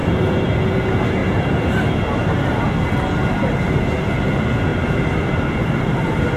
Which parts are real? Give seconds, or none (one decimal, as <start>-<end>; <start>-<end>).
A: 0.6-1.2; 2.7-4.7